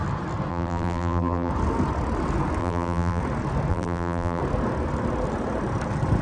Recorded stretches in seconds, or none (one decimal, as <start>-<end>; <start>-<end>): 0.0-0.5; 1.5-2.6; 3.2-3.7; 4.4-6.2